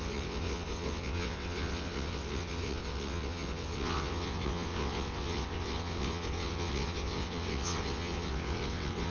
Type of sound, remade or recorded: remade